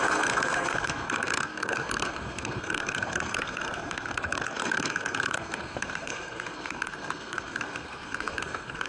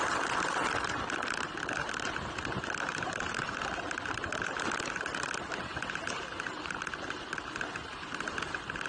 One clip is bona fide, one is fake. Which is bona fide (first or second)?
second